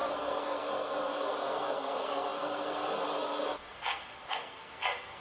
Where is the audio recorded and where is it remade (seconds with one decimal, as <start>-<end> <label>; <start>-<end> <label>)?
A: 0.0-5.2 remade